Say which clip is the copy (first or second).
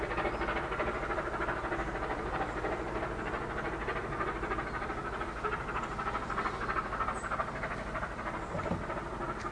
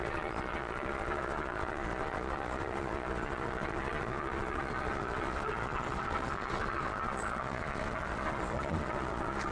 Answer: second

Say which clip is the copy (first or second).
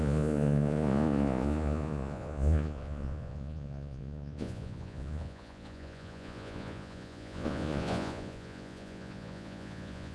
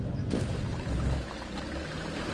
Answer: first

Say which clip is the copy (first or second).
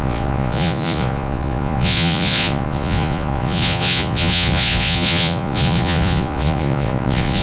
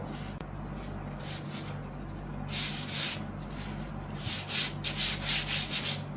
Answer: first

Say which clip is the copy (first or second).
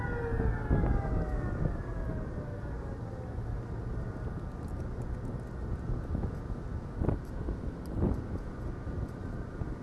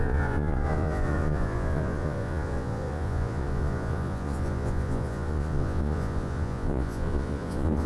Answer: second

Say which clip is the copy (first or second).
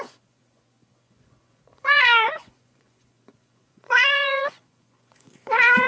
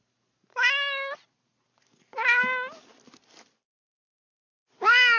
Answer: first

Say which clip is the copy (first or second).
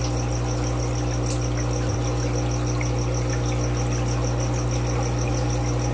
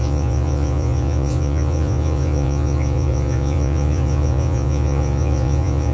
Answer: second